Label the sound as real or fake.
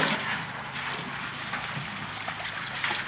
real